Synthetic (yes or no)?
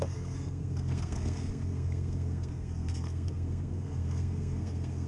yes